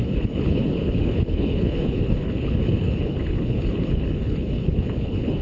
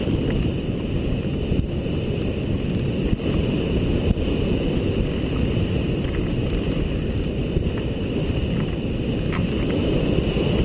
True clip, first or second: second